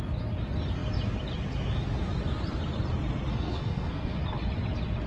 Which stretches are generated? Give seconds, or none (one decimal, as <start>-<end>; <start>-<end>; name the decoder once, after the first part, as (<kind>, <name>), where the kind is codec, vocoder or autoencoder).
3.3-4.2 (codec, SNAC)